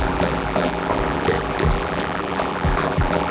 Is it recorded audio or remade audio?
remade